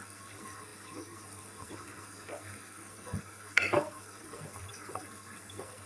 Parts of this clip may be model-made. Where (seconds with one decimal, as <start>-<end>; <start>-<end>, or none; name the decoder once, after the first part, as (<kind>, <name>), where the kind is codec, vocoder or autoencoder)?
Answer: 0.0-5.9 (codec, SNAC)